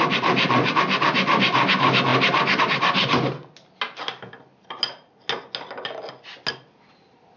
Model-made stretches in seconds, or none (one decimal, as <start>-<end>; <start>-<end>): none